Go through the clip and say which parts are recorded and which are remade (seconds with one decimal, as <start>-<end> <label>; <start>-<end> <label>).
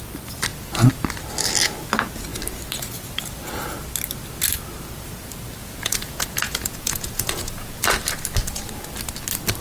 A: 0.0-5.6 recorded; 5.6-7.8 remade; 7.8-9.6 recorded